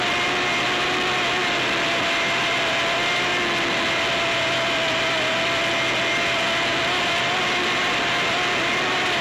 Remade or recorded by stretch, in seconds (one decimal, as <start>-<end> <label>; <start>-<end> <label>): 0.0-9.2 recorded